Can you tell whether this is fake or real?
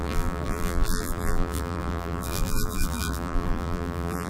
fake